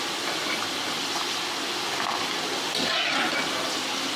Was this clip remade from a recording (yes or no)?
no